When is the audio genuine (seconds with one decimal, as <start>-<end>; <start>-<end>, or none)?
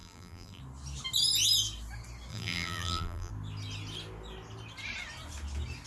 0.6-2.3; 3.3-5.9